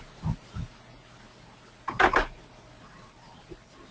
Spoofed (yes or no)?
no